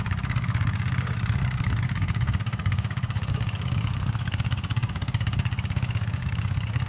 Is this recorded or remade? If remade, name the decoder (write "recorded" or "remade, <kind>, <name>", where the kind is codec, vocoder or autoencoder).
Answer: remade, codec, DAC